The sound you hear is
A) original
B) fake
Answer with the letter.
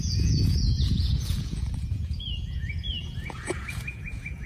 B